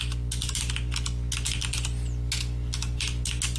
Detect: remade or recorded recorded